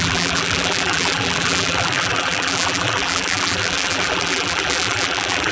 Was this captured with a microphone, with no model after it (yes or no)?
no